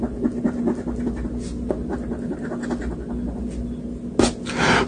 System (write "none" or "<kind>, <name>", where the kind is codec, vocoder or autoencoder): none